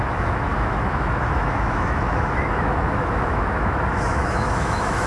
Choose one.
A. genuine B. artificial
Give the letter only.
B